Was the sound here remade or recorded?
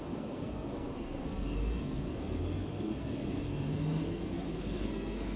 remade